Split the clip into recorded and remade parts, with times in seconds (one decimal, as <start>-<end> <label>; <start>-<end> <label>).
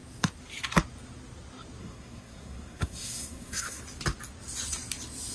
0.0-1.8 recorded; 1.8-3.8 remade; 3.8-5.3 recorded